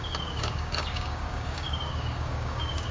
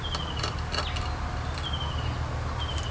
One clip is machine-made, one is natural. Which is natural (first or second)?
second